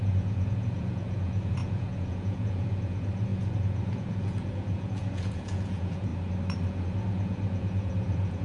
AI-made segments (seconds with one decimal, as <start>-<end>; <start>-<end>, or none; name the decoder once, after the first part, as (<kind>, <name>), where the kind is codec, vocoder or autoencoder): 0.0-6.1 (vocoder, Vocos); 6.7-8.4